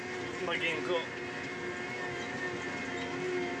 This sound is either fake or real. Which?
real